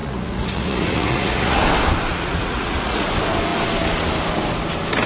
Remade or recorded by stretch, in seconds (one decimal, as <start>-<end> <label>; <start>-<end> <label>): 0.0-1.6 remade; 1.6-2.1 recorded; 2.1-3.1 remade; 3.1-5.1 recorded